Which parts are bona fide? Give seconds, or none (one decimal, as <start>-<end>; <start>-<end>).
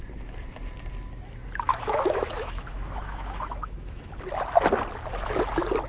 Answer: 0.0-1.7; 4.1-5.9